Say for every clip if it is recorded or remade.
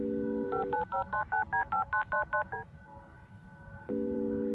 recorded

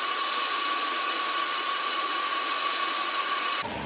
remade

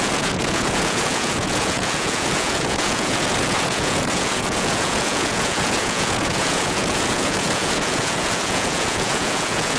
remade